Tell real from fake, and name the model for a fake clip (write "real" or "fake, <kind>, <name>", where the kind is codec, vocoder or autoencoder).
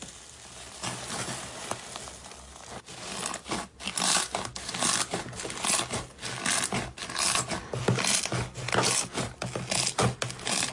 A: real